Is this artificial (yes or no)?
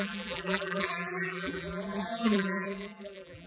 yes